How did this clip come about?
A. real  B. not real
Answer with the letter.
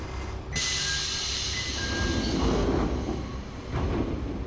A